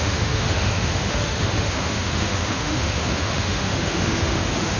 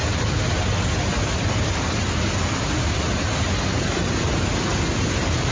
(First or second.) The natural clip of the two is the second